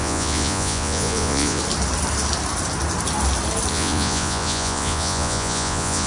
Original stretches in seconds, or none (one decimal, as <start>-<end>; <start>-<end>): 1.6-3.7